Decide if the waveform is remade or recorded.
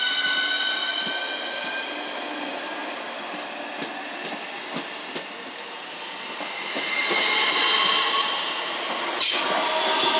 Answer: recorded